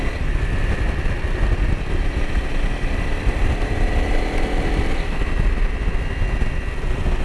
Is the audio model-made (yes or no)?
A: no